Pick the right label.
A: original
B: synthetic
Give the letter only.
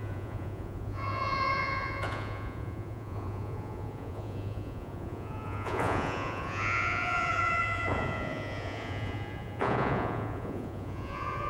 B